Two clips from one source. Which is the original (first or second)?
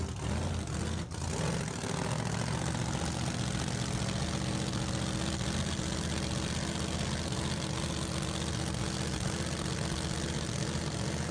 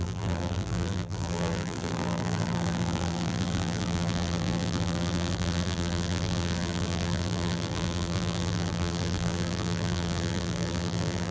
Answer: first